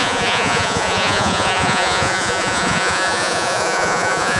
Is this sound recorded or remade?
remade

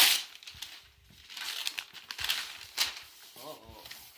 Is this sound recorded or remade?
recorded